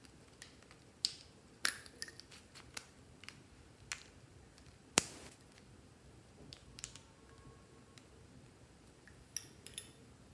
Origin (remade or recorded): recorded